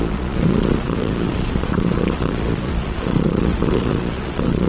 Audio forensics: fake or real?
fake